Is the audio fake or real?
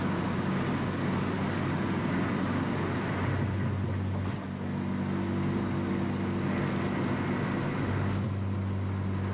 real